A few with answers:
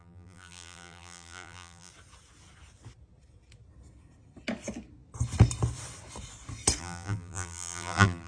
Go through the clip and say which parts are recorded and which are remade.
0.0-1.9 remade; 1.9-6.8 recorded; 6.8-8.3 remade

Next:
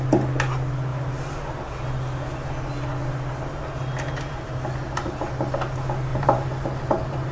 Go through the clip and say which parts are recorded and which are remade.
0.0-6.1 recorded; 6.1-7.3 remade